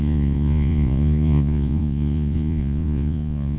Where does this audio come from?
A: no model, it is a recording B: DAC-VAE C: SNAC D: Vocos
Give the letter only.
D